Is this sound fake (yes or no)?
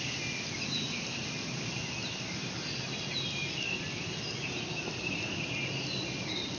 no